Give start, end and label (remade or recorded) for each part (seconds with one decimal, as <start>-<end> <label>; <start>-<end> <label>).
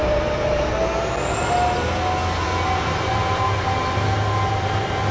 0.0-0.7 remade; 0.7-5.1 recorded